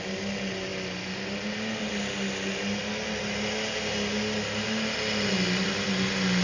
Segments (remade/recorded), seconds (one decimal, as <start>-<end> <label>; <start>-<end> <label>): 0.0-6.4 recorded